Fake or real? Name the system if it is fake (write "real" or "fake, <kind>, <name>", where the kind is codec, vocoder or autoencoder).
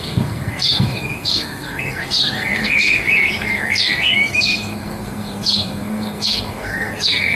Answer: fake, codec, SNAC